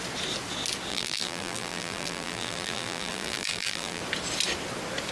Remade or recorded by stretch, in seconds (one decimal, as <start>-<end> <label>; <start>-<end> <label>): 0.0-0.9 recorded; 0.9-4.0 remade; 4.0-5.1 recorded